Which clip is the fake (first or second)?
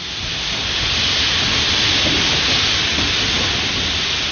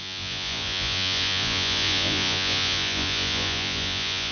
second